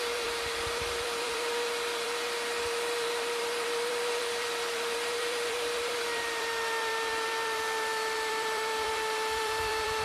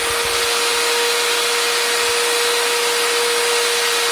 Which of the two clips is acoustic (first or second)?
second